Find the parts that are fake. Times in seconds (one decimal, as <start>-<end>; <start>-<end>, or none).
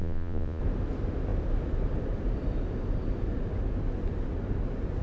0.0-0.6